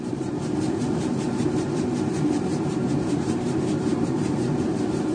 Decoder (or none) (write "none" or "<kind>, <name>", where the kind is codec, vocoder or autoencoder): vocoder, BigVGAN v2